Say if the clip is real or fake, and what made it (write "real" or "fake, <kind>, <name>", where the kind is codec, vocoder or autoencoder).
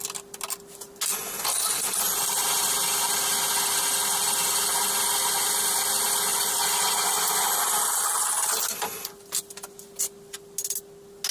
real